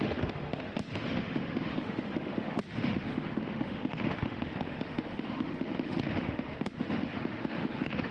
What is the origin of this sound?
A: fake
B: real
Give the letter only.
A